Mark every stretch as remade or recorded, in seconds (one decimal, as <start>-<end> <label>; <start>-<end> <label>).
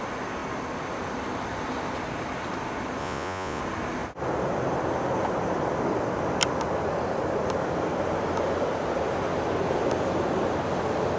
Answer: 0.0-3.0 recorded; 3.0-3.6 remade; 3.6-11.2 recorded